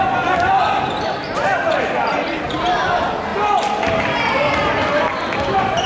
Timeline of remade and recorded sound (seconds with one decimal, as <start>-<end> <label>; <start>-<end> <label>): 0.0-3.3 remade; 3.3-4.0 recorded; 4.0-5.9 remade